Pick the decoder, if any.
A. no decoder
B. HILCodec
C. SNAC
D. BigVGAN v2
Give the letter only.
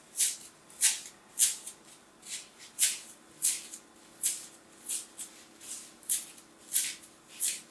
A